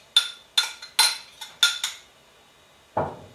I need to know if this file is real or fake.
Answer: real